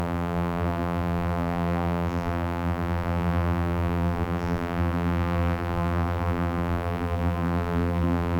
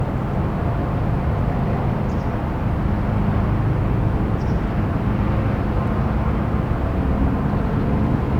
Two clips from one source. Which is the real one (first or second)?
second